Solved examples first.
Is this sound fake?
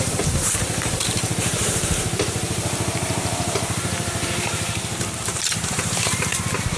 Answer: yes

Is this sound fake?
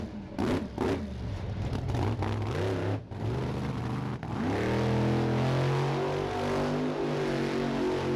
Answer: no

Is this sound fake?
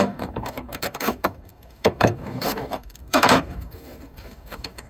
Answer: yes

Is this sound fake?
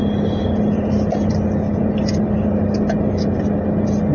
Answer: no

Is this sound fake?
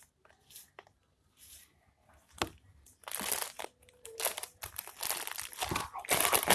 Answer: no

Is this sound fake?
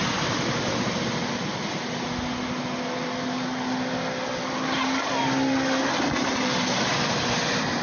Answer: no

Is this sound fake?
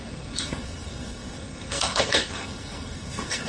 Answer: yes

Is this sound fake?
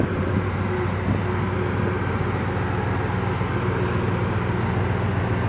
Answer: no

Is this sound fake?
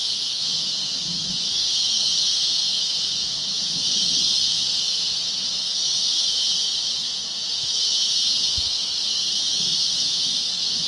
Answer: yes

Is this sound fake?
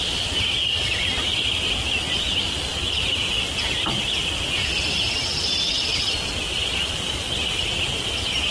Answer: no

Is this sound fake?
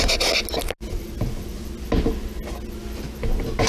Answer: no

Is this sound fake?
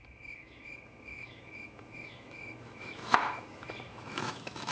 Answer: yes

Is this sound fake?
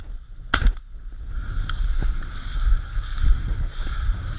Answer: no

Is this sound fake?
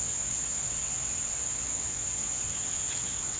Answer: yes